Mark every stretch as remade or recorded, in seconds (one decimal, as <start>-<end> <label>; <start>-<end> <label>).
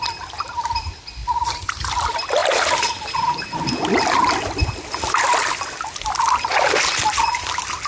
0.0-1.2 recorded; 1.2-1.9 remade; 1.9-7.9 recorded